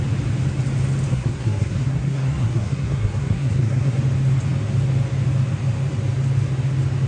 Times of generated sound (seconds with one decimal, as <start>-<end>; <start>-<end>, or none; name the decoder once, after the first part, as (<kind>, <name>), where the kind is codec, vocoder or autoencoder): 1.1-4.0 (codec, SNAC)

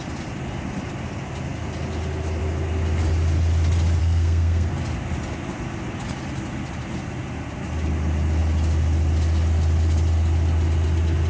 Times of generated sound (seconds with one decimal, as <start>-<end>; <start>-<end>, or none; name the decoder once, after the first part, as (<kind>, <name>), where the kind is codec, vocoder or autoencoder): 4.0-4.7 (codec, SNAC)

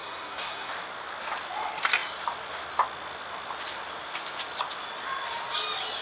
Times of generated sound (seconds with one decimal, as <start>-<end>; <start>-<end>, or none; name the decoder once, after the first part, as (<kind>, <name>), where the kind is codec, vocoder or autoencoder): 0.0-0.7 (codec, SNAC)

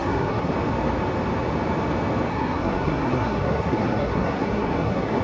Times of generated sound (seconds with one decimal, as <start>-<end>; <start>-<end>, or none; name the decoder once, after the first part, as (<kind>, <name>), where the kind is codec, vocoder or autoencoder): 0.0-0.5 (codec, SNAC); 2.3-5.2

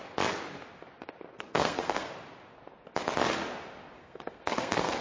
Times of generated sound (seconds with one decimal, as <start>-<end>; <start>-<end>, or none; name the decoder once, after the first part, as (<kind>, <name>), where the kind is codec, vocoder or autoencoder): 1.5-2.1 (codec, SNAC); 4.0-5.0

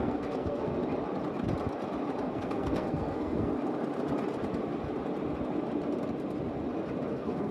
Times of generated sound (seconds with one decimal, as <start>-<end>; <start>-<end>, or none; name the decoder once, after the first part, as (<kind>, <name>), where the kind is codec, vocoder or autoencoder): 0.0-0.8 (codec, SNAC); 2.2-3.5; 7.1-7.5

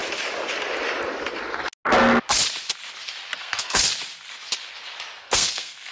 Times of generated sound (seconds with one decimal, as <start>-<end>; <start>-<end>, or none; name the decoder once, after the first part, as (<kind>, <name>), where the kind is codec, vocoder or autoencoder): 3.4-3.9 (codec, SNAC); 5.2-5.9